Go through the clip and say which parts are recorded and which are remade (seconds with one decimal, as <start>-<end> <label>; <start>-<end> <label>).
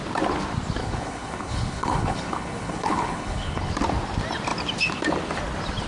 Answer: 0.0-0.8 recorded; 0.8-3.7 remade; 3.7-5.9 recorded